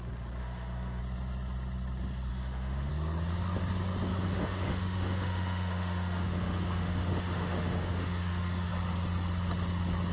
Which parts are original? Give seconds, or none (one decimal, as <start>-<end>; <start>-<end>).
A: 0.0-0.4; 1.0-2.3; 2.9-4.1; 8.7-10.1